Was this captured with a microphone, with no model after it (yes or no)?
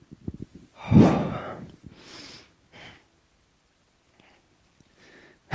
yes